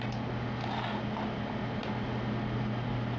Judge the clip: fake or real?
real